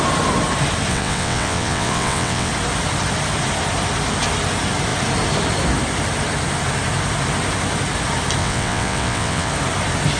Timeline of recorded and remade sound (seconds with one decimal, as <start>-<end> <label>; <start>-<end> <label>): 0.0-0.9 recorded; 0.9-2.5 remade; 2.5-8.4 recorded; 8.4-9.5 remade; 9.5-10.2 recorded